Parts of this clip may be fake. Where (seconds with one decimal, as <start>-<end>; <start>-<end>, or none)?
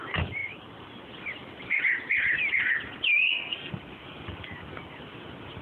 3.1-3.7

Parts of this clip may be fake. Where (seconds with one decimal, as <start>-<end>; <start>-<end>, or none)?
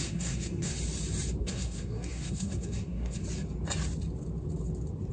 0.0-0.7; 1.4-3.2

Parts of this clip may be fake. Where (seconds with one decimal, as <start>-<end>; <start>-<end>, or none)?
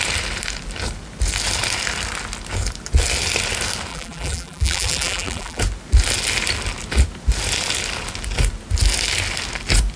3.9-5.6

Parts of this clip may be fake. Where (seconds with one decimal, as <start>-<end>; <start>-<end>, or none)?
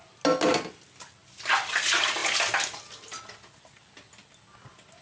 none